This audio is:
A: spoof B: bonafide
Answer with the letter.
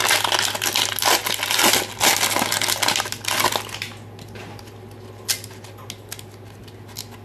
B